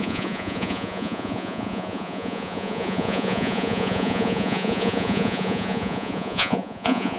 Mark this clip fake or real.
fake